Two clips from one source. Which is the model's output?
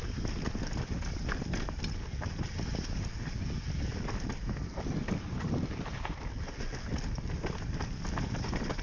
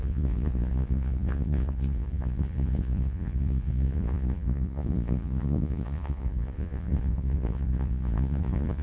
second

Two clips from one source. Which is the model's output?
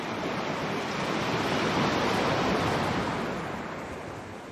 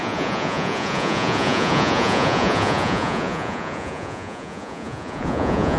second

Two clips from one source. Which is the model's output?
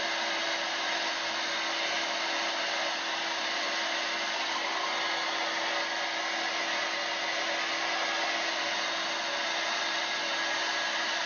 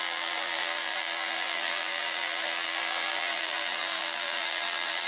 second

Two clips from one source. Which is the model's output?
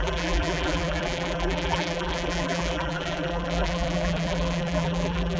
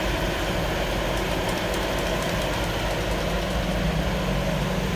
first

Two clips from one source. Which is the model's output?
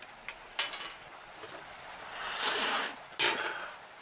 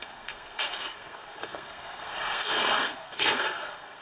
second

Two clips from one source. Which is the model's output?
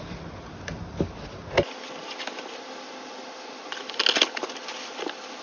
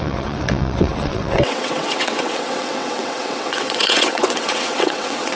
second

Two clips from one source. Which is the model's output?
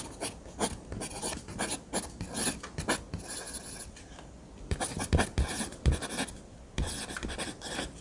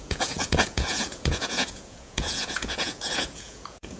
second